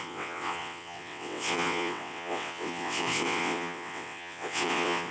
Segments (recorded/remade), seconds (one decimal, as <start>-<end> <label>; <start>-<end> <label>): 0.0-5.1 remade